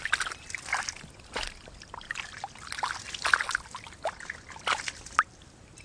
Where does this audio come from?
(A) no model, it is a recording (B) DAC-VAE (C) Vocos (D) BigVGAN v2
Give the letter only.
A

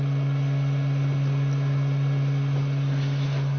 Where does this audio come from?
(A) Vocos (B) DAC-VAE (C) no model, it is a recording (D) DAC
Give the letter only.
C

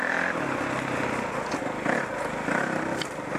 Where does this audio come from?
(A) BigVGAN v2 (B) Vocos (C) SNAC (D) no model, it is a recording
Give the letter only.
D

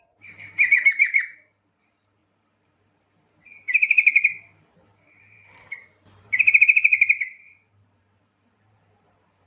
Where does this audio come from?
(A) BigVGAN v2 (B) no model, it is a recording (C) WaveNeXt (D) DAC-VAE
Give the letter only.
A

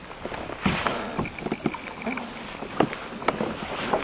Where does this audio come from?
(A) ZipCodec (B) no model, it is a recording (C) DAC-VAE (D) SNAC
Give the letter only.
B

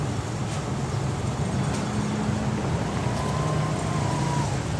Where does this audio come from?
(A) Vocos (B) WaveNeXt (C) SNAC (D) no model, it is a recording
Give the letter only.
D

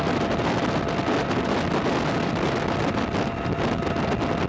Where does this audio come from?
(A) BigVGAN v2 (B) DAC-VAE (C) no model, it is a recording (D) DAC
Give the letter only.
C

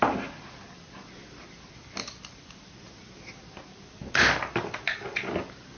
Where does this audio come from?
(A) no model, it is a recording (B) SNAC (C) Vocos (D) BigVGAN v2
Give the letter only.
A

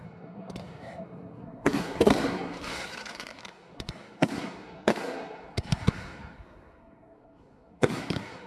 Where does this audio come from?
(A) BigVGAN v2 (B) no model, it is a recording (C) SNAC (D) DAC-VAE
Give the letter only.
C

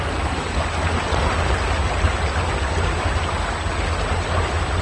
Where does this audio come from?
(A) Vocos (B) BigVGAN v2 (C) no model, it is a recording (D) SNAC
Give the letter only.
C